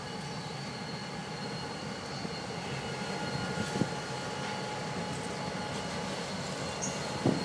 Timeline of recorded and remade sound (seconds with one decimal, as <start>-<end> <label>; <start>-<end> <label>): 0.0-7.4 recorded